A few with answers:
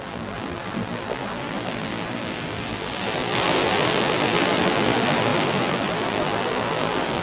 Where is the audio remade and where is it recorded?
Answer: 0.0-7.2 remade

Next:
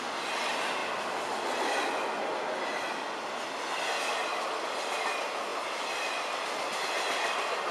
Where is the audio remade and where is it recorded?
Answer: 0.0-7.7 recorded

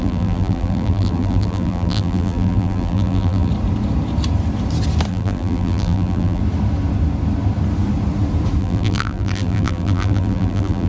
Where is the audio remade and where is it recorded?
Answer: 0.0-3.5 remade; 3.5-5.1 recorded; 5.1-6.4 remade; 6.4-8.6 recorded; 8.6-10.9 remade

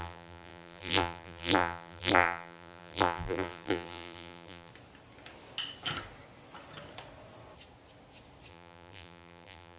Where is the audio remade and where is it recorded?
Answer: 0.0-4.7 remade; 4.7-8.5 recorded; 8.5-9.8 remade

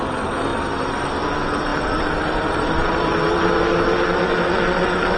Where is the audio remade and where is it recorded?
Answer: 0.0-0.5 recorded; 0.5-1.1 remade; 1.1-1.7 recorded; 1.7-3.5 remade; 3.5-5.2 recorded